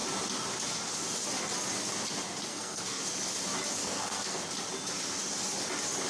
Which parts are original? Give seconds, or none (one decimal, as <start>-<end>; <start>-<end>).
0.0-2.5; 3.0-3.8; 4.4-6.1